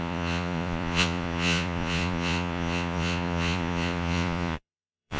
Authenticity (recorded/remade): remade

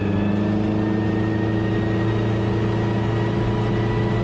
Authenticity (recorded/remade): recorded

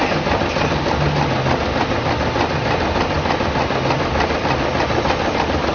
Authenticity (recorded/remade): recorded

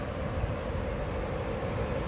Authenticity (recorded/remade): recorded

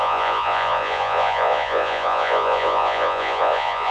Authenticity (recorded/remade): remade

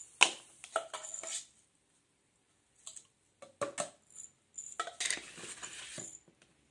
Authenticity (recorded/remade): recorded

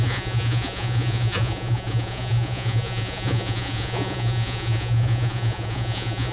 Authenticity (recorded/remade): remade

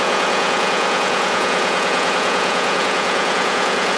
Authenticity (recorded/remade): remade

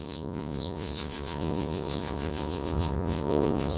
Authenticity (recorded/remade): remade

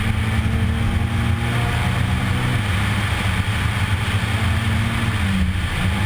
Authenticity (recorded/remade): recorded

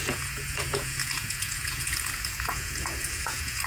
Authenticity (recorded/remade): remade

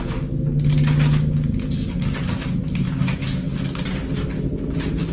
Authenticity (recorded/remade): recorded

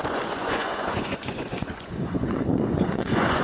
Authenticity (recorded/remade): remade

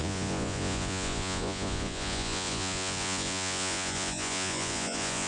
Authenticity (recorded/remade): remade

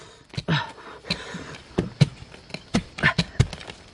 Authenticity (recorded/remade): recorded